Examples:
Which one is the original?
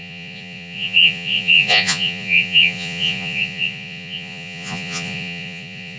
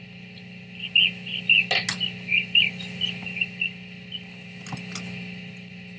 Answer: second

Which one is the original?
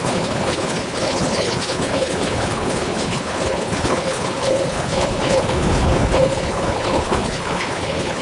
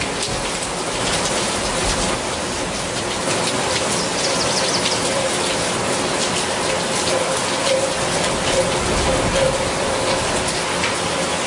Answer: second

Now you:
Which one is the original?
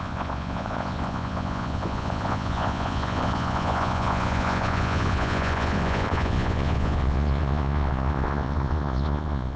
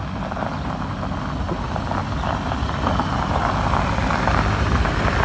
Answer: second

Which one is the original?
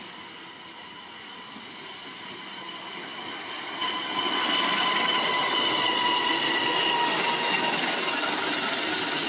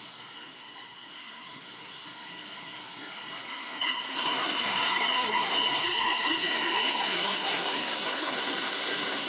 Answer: first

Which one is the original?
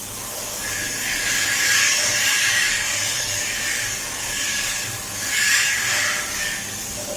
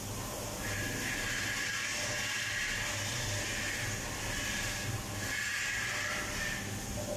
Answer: second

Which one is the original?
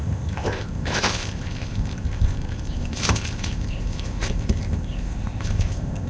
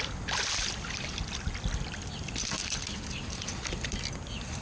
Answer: second